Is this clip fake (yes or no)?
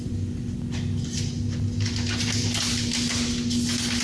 no